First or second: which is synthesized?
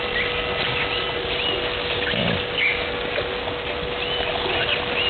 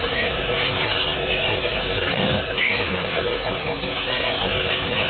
second